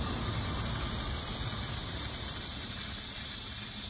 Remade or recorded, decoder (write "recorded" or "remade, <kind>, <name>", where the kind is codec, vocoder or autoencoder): remade, vocoder, BigVGAN v2